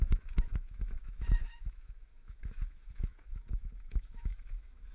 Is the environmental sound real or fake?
fake